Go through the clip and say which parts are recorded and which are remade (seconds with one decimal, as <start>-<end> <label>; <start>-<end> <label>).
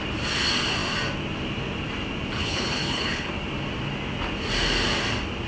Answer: 0.0-2.4 recorded; 2.4-3.3 remade; 3.3-5.5 recorded